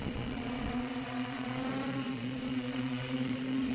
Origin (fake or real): fake